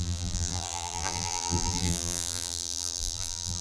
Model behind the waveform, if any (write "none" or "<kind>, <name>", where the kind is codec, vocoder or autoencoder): vocoder, BigVGAN v2